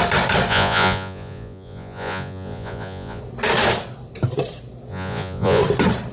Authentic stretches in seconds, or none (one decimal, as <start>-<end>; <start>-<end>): 0.0-0.5; 3.2-4.9; 5.6-6.1